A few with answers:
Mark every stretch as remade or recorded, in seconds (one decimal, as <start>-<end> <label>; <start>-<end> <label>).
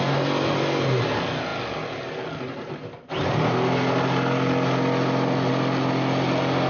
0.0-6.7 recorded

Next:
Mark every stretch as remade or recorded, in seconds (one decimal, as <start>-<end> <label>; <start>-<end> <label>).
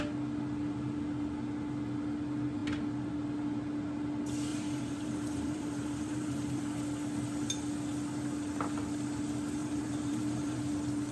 0.0-4.5 recorded; 4.5-6.6 remade; 6.6-9.6 recorded; 9.6-10.6 remade; 10.6-11.1 recorded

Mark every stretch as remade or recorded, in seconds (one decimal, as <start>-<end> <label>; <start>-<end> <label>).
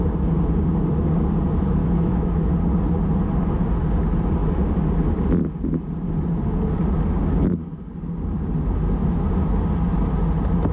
0.0-1.8 recorded; 1.8-2.5 remade; 2.5-10.7 recorded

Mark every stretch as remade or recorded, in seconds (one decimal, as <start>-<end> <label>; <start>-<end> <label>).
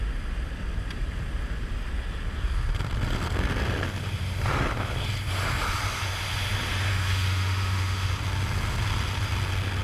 0.0-6.9 recorded; 6.9-8.1 remade; 8.1-9.8 recorded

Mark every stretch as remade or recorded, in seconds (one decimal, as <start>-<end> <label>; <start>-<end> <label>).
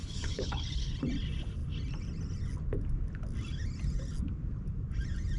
0.0-1.0 remade; 1.0-5.4 recorded